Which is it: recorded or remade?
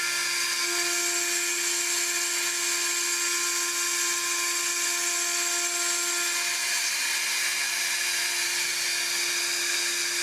recorded